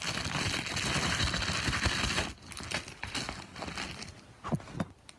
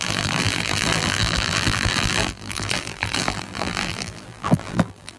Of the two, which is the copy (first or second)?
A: second